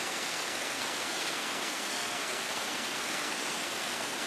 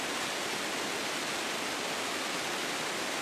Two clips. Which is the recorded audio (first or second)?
second